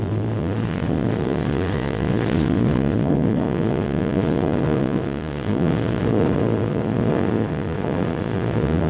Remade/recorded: remade